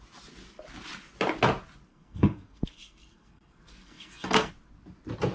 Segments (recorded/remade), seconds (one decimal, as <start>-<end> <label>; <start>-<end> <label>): 0.0-1.9 recorded; 1.9-4.5 remade; 4.5-5.3 recorded